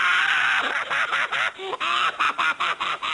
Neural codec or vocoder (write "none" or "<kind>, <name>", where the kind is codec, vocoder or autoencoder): none